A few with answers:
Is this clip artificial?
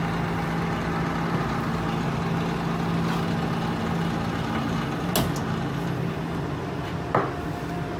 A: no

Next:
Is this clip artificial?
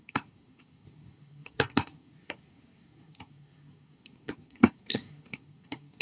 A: yes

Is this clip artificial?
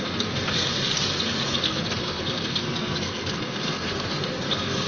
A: yes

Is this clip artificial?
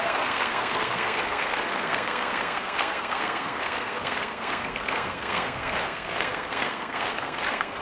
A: yes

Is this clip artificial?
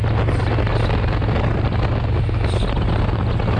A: no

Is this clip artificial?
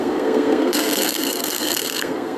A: yes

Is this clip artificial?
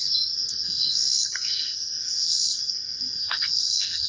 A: yes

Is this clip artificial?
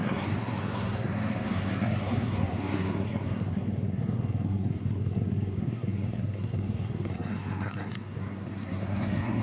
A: yes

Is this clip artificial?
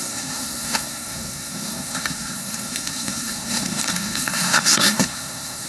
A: yes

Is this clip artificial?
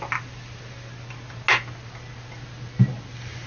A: no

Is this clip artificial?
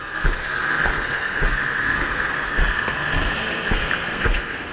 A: yes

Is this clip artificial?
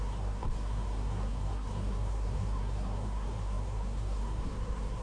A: yes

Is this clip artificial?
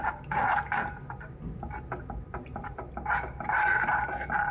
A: no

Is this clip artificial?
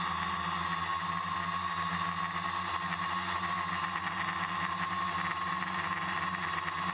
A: no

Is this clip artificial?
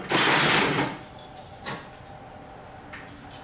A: no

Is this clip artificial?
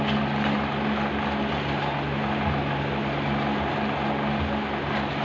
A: no